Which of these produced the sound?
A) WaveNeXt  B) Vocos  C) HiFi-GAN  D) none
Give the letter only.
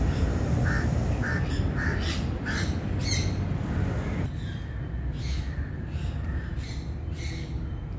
D